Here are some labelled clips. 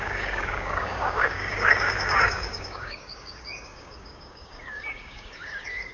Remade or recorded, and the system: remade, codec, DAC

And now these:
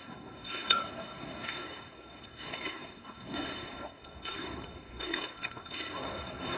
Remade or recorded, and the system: remade, codec, SNAC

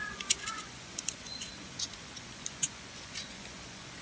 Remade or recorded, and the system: remade, vocoder, Vocos